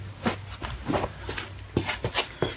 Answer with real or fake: real